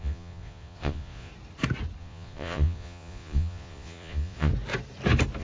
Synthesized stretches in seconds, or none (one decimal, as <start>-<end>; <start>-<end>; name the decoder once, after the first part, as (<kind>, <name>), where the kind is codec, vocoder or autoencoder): 0.0-1.3 (vocoder, Vocos); 2.0-4.5